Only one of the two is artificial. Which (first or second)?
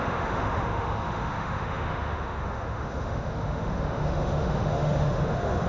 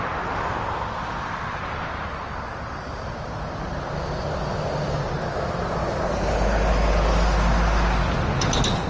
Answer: first